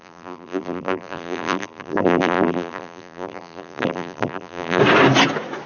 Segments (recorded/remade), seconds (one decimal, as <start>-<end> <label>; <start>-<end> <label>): 0.0-4.8 remade; 4.8-5.7 recorded